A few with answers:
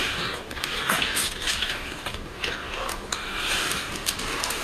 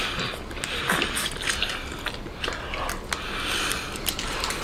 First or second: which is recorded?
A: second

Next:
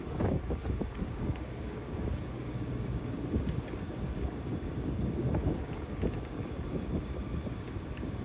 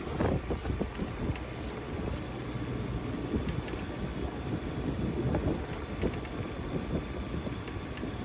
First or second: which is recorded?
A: second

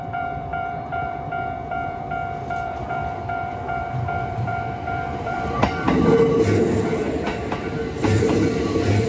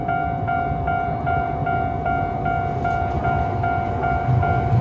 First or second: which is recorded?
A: second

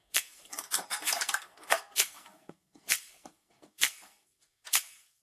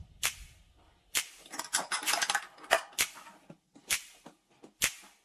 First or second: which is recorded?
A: second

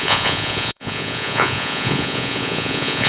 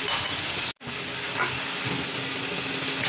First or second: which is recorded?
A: second